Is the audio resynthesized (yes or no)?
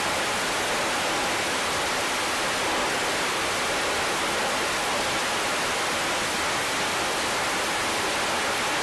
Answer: no